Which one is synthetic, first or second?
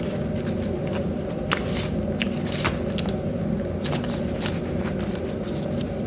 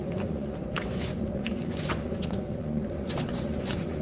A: second